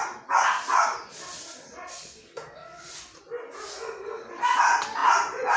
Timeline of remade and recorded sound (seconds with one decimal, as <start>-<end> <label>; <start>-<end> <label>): 0.0-1.9 recorded; 1.9-2.9 remade; 2.9-3.7 recorded; 3.7-4.3 remade; 4.3-5.6 recorded